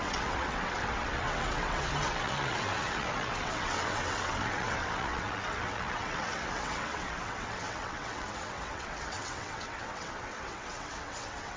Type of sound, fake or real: fake